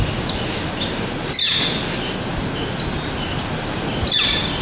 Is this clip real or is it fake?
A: real